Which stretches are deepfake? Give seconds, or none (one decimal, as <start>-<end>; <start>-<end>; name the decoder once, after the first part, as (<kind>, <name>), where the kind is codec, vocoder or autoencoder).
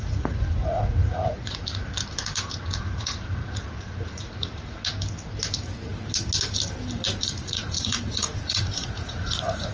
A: 0.0-1.9 (vocoder, Vocos); 2.8-4.8; 7.2-9.7